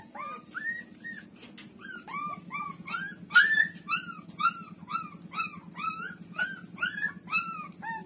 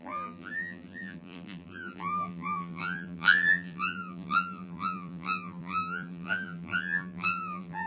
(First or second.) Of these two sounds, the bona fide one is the first